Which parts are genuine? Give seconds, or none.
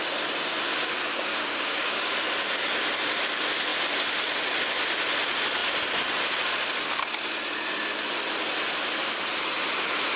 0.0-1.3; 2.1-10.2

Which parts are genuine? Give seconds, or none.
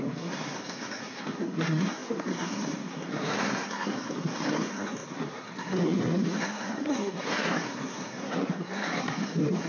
none